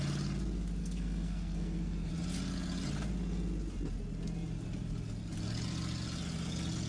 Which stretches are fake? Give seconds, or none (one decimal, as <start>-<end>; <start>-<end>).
0.8-2.1